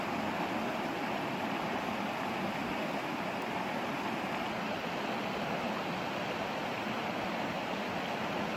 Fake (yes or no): no